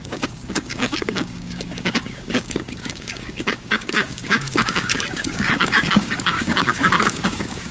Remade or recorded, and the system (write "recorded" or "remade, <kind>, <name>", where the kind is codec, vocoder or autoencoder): remade, codec, DAC